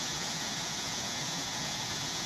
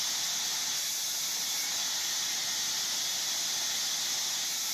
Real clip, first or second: second